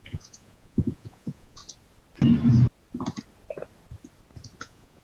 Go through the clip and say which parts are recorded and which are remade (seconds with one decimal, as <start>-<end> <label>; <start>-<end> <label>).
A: 0.0-1.6 remade; 1.6-4.6 recorded; 4.6-5.0 remade